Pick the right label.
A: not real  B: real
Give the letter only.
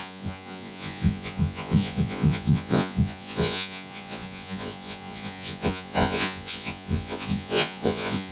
A